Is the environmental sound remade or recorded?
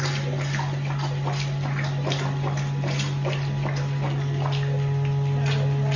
recorded